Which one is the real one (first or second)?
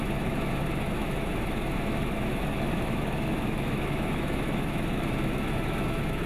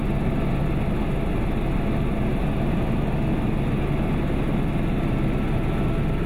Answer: second